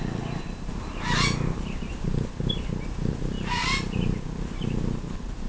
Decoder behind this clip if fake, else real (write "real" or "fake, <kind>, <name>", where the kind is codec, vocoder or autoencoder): real